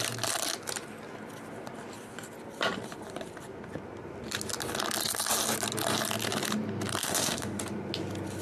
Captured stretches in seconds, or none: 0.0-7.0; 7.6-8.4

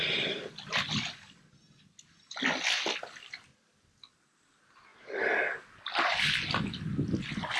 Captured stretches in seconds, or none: 0.0-7.6